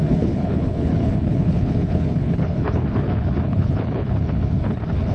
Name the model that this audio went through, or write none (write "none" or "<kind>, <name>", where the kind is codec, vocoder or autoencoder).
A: codec, HILCodec